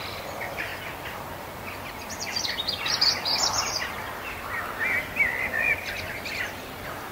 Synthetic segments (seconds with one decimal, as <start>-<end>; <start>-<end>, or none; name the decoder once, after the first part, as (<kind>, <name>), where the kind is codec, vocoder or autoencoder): none